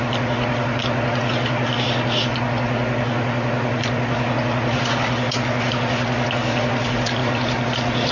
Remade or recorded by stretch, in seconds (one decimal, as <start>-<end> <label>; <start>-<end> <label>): 0.0-8.1 recorded